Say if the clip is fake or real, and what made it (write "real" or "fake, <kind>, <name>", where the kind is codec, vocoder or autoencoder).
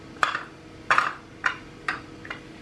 real